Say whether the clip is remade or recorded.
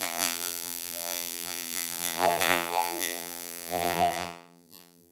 remade